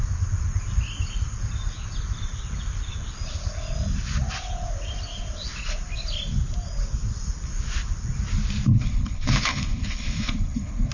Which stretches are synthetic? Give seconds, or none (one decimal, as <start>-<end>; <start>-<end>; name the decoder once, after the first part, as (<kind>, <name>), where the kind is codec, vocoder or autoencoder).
8.7-10.9 (codec, HILCodec)